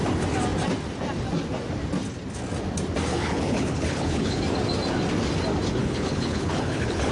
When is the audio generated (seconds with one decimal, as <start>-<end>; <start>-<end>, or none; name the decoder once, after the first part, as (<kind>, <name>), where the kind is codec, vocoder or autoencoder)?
3.1-4.4 (codec, HILCodec); 5.8-7.1